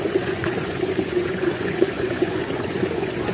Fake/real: fake